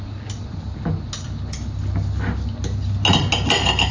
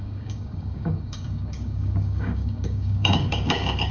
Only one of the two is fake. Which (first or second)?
second